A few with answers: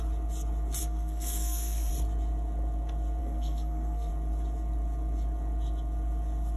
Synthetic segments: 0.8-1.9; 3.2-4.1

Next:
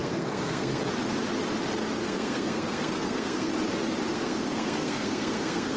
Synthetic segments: 0.0-0.8; 2.0-3.5; 4.1-5.8

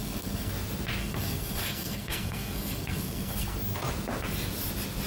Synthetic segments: 0.0-0.5; 1.0-3.9

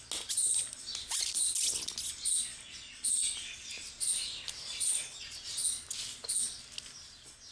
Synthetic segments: none

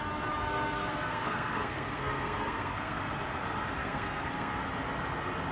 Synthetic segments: 0.4-3.0; 3.8-4.6

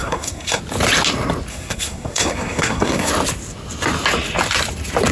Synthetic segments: 0.0-0.6; 1.5-3.1